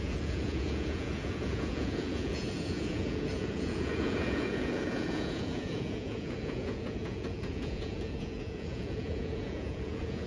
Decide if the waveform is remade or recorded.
remade